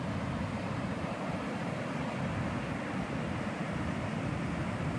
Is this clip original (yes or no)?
yes